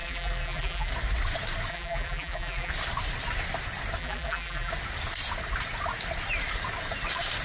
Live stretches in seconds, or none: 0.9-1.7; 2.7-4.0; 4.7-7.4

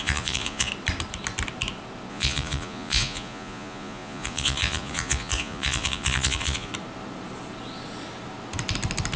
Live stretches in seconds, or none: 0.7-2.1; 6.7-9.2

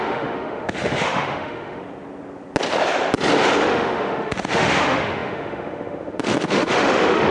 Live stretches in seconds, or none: 1.8-3.6

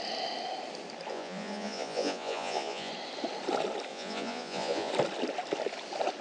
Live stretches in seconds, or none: 0.0-1.1; 2.9-3.9; 4.9-6.2

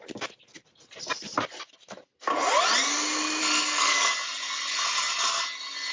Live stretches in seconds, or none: 0.0-3.4; 4.1-5.9